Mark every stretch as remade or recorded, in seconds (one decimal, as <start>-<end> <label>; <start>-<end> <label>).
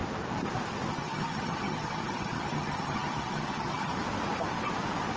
0.0-0.9 recorded; 0.9-3.9 remade; 3.9-5.2 recorded